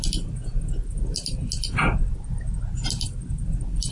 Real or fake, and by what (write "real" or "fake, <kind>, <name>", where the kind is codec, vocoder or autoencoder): real